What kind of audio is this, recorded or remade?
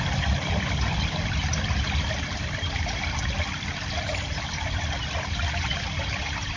recorded